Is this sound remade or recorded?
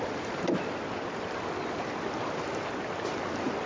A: recorded